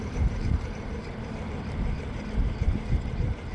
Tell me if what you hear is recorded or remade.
remade